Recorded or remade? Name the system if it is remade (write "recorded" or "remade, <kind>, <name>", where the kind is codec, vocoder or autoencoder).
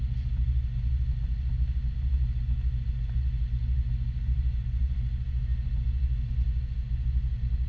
recorded